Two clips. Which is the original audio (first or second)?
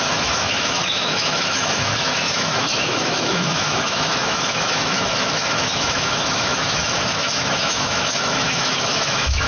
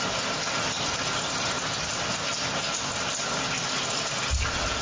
second